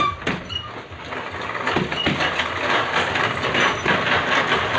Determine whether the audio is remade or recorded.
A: recorded